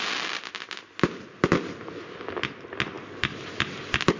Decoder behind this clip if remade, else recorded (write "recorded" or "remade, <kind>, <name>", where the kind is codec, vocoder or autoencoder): recorded